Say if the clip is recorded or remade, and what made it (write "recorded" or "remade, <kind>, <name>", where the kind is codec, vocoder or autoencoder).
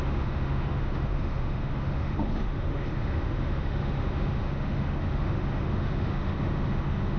remade, autoencoder, DAC-VAE